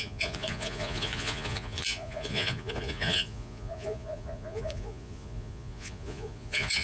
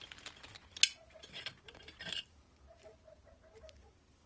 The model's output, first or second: first